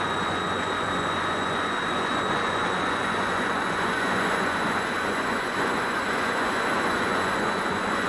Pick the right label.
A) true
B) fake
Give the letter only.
B